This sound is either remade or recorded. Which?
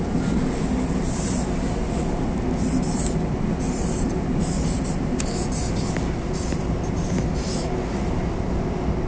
recorded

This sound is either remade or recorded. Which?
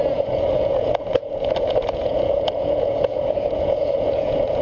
remade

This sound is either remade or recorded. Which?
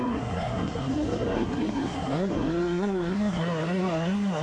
remade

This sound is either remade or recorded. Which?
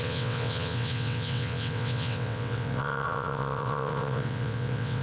remade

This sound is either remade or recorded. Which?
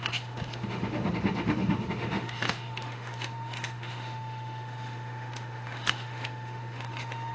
remade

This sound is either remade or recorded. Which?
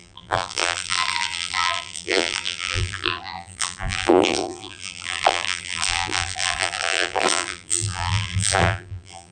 remade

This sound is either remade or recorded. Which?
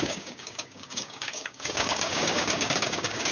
remade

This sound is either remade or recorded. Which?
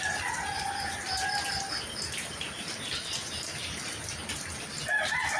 recorded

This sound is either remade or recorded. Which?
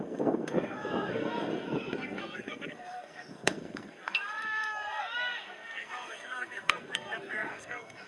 remade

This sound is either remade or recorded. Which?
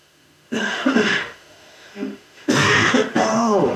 remade